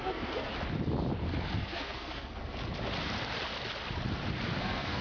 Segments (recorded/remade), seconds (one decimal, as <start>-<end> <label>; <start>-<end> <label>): 0.0-0.5 remade; 0.5-1.6 recorded; 1.6-2.4 remade; 2.4-4.6 recorded; 4.6-5.0 remade